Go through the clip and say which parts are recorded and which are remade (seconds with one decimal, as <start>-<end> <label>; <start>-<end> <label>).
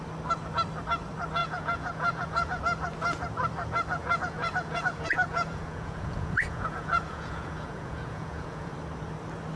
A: 0.0-1.4 recorded; 1.4-2.6 remade; 2.6-4.0 recorded; 4.0-8.7 remade; 8.7-9.6 recorded